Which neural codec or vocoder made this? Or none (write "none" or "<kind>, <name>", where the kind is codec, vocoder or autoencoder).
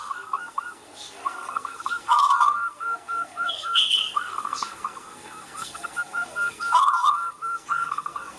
codec, SNAC